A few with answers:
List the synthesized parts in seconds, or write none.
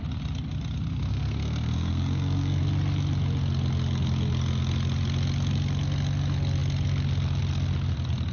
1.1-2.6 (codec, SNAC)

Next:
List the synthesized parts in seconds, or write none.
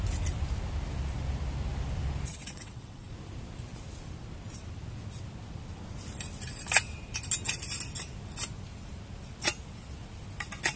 2.3-3.1 (vocoder, WaveNeXt)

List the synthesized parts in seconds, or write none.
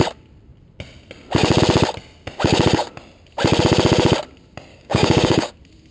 4.7-5.5 (codec, DAC)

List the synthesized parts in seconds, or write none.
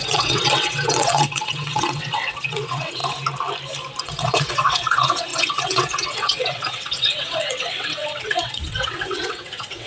0.0-3.0 (vocoder, WaveNeXt); 4.0-9.9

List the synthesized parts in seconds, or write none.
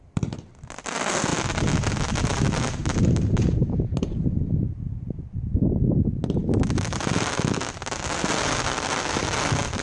2.8-5.7 (vocoder, BigVGAN v2); 6.4-7.0